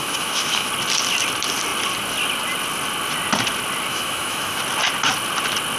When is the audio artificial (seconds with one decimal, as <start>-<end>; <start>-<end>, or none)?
0.0-0.7; 3.9-4.6